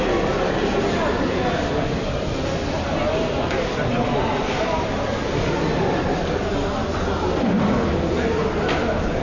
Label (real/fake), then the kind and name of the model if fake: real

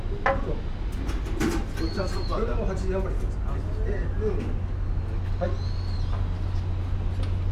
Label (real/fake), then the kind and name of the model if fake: real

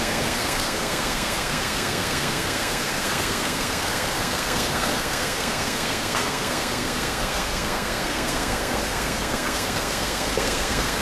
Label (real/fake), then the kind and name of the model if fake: fake, codec, SNAC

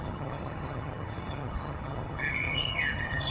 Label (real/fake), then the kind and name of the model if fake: fake, vocoder, HiFi-GAN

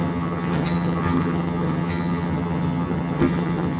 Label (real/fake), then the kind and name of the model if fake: fake, vocoder, HiFi-GAN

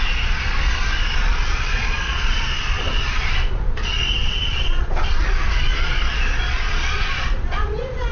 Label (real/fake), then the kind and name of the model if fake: fake, vocoder, Vocos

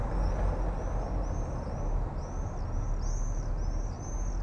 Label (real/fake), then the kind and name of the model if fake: real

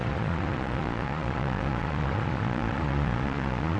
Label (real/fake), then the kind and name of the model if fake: fake, vocoder, Vocos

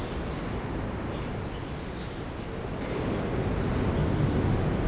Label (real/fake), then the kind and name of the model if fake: real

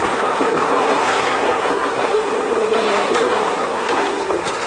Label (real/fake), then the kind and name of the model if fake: fake, codec, SNAC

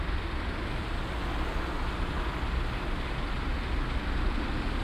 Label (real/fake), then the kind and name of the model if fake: real